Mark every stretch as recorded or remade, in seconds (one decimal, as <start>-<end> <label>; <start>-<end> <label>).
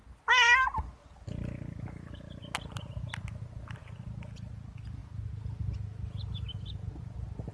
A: 0.0-7.5 recorded